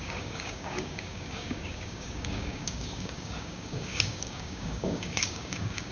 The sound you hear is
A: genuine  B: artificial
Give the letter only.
B